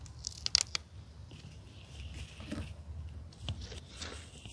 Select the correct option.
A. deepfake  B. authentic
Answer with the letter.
B